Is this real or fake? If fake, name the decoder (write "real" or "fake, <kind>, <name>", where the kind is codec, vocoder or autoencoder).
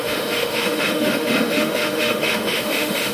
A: fake, autoencoder, DAC-VAE